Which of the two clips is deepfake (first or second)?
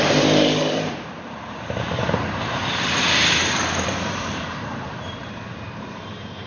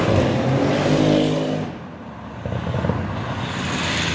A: first